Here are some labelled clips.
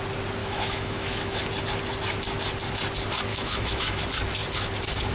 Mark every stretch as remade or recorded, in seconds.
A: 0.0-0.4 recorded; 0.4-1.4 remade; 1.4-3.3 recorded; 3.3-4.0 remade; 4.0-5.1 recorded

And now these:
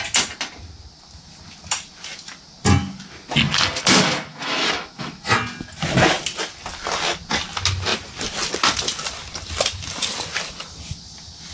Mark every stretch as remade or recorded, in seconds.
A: 0.0-4.3 recorded; 4.3-5.3 remade; 5.3-11.5 recorded

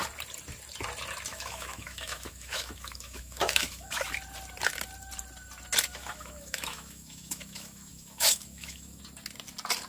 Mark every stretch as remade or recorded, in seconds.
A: 0.0-1.3 recorded; 1.3-4.1 remade; 4.1-5.9 recorded; 5.9-9.0 remade; 9.0-9.9 recorded

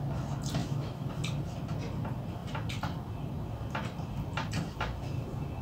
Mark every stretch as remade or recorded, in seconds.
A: 0.0-0.6 recorded; 0.6-1.1 remade; 1.1-5.6 recorded

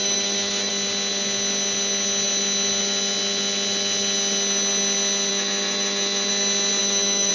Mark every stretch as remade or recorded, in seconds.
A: 0.0-0.7 remade; 0.7-5.3 recorded; 5.3-6.3 remade; 6.3-6.8 recorded; 6.8-7.3 remade

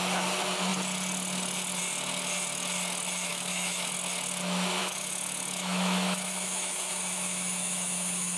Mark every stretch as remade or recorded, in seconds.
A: 0.0-3.3 recorded; 3.3-3.9 remade; 3.9-4.8 recorded; 4.8-8.4 remade

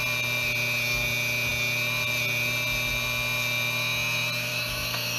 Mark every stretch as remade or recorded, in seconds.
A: 0.0-4.5 recorded; 4.5-5.2 remade